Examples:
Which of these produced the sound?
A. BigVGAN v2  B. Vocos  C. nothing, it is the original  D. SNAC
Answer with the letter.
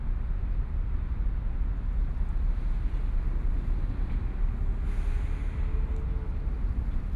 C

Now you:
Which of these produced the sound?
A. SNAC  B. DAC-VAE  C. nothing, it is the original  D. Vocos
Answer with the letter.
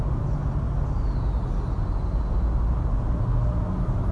C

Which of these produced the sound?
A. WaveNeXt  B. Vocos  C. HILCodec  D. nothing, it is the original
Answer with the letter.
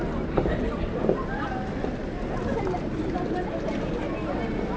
D